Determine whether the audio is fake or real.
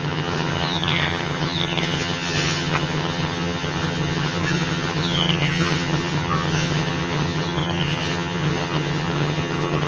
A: fake